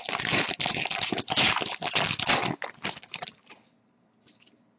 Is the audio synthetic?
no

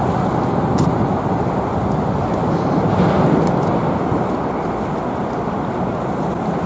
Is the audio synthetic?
no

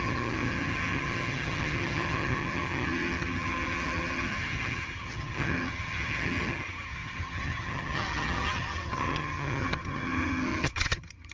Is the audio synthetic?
yes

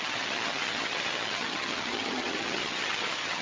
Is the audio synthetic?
yes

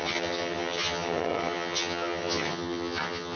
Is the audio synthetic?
yes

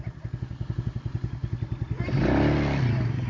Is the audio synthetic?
no